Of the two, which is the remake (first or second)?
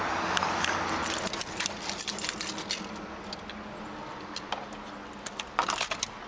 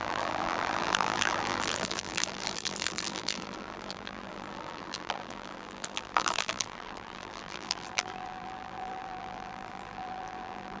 second